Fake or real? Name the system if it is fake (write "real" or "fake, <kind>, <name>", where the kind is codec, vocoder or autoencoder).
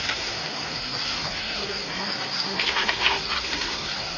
fake, codec, SNAC